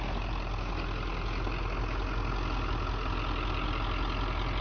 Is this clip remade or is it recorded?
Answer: recorded